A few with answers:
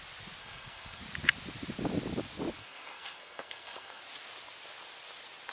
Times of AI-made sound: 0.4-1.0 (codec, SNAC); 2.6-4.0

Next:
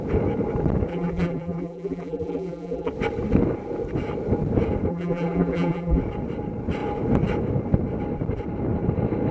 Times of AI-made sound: 0.9-2.9 (vocoder, BigVGAN v2); 4.9-6.0

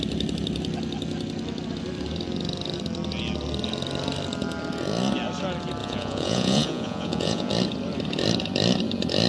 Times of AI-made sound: 5.8-7.5 (vocoder, Vocos)

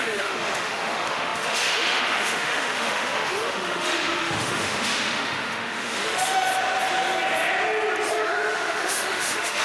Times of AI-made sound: 0.0-6.5 (autoencoder, DAC-VAE); 8.1-9.6

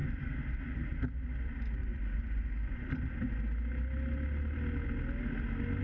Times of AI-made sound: 1.8-2.8 (vocoder, Vocos)

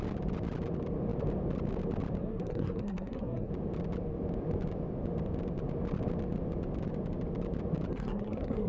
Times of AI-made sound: 2.2-3.5 (codec, SNAC); 7.9-8.7

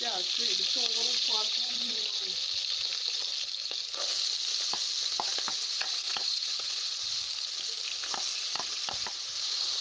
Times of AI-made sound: 1.3-2.0 (vocoder, Vocos); 5.5-7.0; 8.3-8.8

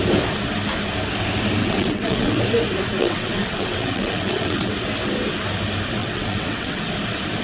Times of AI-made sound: 1.6-2.4 (vocoder, WaveNeXt); 3.0-4.7; 6.0-6.8